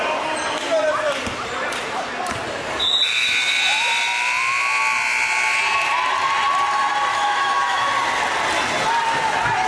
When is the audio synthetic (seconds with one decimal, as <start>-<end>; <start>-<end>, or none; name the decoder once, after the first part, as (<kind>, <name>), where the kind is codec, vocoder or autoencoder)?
7.1-7.9 (autoencoder, DAC-VAE)